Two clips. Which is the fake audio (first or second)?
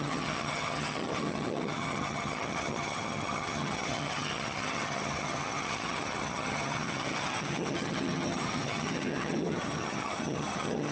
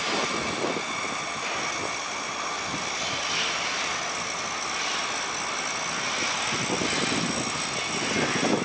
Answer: first